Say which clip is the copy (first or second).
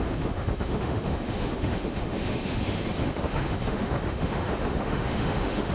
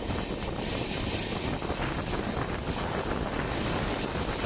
first